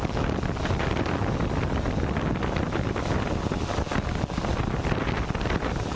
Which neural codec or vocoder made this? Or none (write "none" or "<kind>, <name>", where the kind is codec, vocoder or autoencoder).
none